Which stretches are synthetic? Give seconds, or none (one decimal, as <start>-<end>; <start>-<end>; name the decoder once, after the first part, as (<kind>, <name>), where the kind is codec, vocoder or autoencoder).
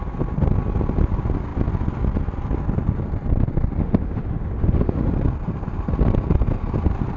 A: 3.8-5.1 (autoencoder, DAC-VAE)